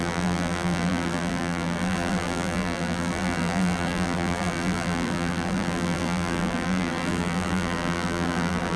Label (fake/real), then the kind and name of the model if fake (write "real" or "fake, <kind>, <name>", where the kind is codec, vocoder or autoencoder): fake, vocoder, BigVGAN v2